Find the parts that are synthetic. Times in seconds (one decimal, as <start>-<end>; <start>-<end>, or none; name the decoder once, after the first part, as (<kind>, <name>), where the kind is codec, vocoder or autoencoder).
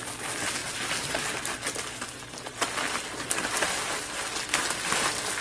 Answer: none